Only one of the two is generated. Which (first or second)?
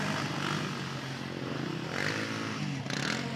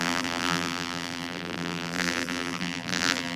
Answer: second